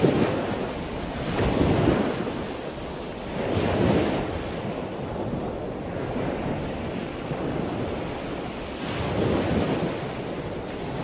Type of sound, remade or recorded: recorded